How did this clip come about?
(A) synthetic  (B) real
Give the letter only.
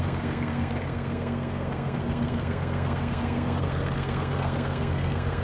A